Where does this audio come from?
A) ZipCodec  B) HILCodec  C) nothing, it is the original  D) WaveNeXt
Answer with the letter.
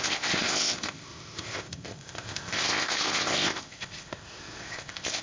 A